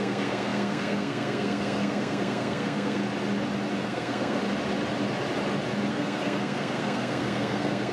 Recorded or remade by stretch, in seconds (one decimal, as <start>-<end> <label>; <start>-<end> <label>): 0.0-3.0 remade; 3.0-3.8 recorded; 3.8-4.4 remade; 4.4-5.9 recorded; 5.9-7.9 remade